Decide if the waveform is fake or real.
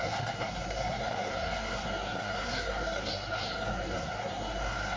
fake